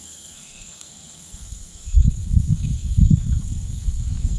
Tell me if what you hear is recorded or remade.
remade